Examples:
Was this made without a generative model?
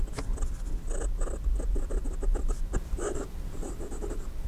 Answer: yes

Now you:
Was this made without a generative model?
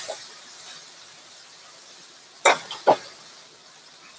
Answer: yes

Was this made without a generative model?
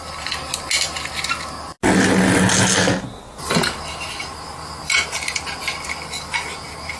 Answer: yes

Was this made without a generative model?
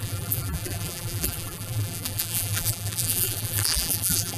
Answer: no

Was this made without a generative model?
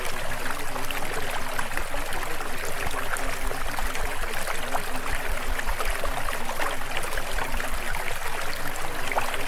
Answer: yes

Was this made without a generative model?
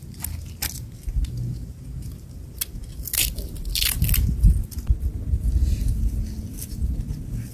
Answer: yes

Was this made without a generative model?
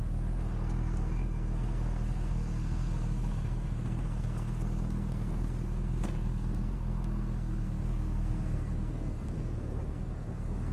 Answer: no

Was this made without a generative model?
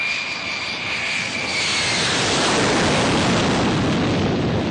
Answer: yes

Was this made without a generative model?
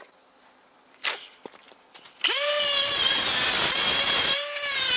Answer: yes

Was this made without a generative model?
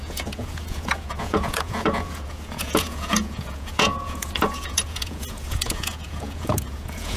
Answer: no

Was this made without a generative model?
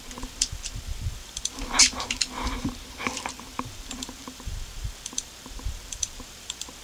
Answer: no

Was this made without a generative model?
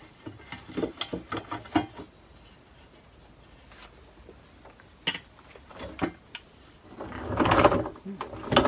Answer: yes